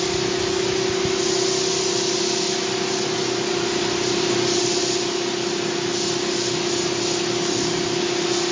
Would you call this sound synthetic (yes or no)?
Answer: no